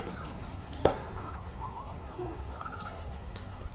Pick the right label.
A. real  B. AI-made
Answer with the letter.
B